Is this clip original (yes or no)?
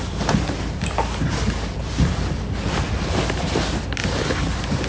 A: no